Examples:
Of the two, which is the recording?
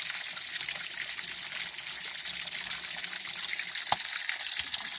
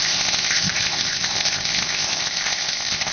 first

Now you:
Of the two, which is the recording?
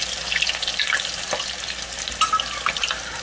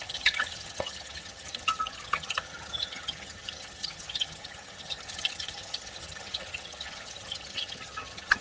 first